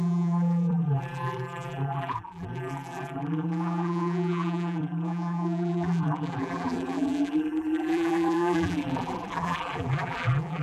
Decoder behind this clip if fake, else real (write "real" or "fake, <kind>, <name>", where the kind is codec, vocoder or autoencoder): fake, vocoder, BigVGAN v2